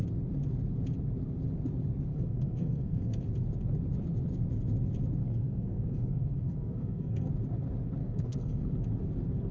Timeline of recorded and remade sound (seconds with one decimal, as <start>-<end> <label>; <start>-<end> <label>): 0.0-2.1 recorded; 2.1-3.2 remade; 3.2-5.2 recorded; 5.2-7.3 remade; 7.3-8.0 recorded; 8.0-8.7 remade; 8.7-9.5 recorded